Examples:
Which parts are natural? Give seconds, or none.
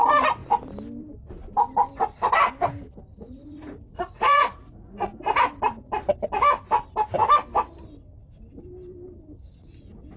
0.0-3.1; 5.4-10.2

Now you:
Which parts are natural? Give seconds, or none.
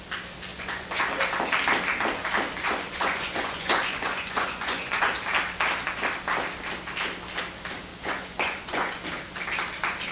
0.0-0.5; 1.0-2.6; 5.1-7.9; 9.0-10.1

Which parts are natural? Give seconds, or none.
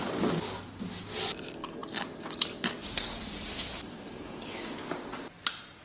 0.0-5.8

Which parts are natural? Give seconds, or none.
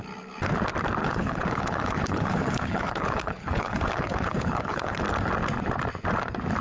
0.0-1.0; 5.0-6.6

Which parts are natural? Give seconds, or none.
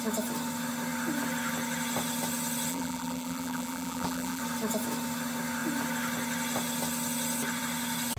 0.0-2.7; 4.4-8.2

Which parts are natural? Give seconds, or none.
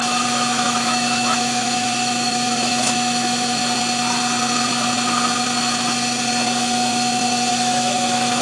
3.6-7.5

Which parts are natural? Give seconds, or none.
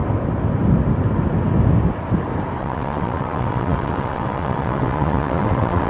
0.0-2.6